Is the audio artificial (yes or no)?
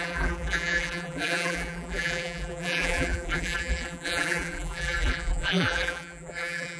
yes